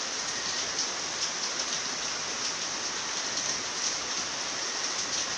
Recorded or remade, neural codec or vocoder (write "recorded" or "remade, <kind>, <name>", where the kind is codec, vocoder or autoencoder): recorded